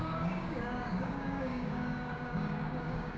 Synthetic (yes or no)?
yes